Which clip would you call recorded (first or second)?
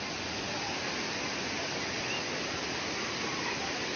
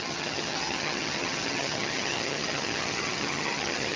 first